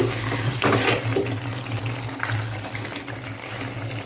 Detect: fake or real real